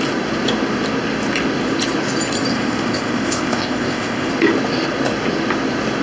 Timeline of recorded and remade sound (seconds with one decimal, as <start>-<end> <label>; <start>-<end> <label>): 0.0-2.5 recorded; 2.5-4.3 remade; 4.3-6.0 recorded